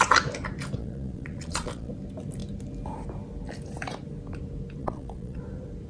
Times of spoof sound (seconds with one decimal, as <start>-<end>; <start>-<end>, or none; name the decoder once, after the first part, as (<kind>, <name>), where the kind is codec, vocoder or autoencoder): 0.8-1.9 (vocoder, Vocos); 4.8-5.4